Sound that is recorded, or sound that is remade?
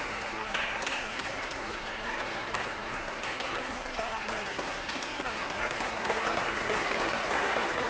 remade